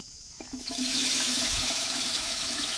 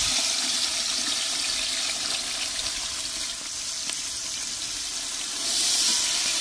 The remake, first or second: first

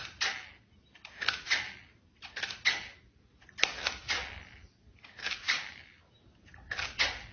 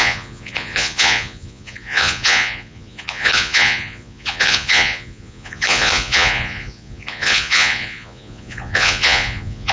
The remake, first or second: second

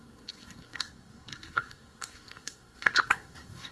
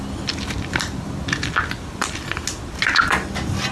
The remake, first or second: first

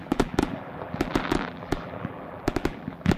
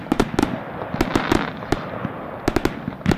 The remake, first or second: first